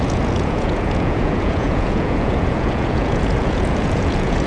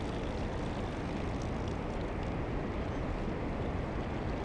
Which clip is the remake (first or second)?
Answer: first